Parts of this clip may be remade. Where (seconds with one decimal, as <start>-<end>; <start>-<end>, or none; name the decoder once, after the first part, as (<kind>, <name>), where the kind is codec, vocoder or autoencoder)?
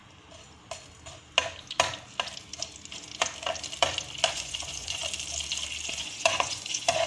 4.3-5.0 (vocoder, Vocos); 5.9-7.1